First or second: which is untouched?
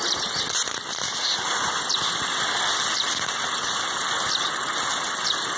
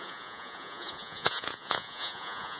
first